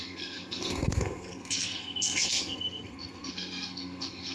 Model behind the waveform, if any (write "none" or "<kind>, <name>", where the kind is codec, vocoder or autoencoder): codec, SNAC